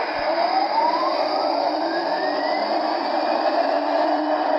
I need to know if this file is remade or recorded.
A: remade